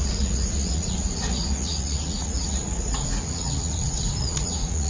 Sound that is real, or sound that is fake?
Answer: fake